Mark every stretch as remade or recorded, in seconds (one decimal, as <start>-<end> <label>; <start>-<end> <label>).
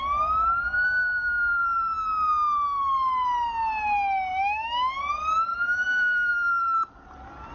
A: 0.0-4.3 recorded; 4.3-5.0 remade; 5.0-5.5 recorded; 5.5-6.3 remade; 6.3-7.5 recorded